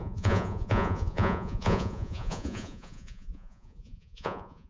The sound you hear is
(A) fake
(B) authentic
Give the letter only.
A